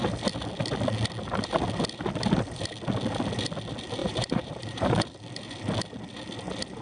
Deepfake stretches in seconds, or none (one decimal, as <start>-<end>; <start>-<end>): 4.0-4.9

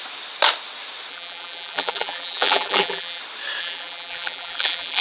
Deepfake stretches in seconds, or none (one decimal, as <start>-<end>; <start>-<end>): 1.1-3.2; 3.6-5.0

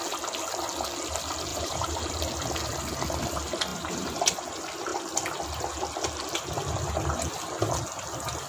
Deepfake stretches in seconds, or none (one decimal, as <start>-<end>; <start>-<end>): 1.5-2.1; 3.7-4.2

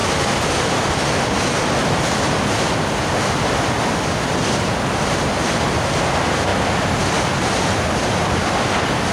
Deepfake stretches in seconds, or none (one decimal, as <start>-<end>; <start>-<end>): none

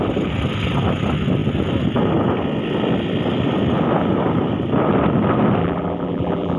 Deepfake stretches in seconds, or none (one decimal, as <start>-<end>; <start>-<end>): 5.6-6.6

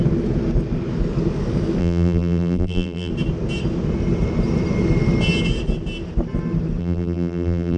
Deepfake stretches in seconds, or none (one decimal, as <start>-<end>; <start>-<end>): 1.8-3.1; 6.8-7.8

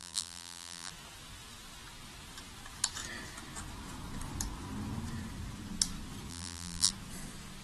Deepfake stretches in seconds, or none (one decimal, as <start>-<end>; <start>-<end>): 0.0-0.9; 6.3-6.9